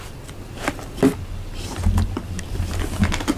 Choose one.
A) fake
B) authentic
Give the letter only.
B